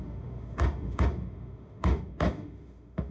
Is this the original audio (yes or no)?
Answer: no